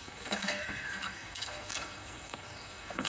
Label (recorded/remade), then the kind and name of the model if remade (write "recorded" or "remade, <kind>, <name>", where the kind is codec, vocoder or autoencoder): remade, codec, SNAC